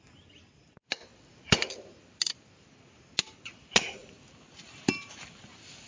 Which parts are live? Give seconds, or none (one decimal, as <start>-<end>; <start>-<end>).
0.0-5.9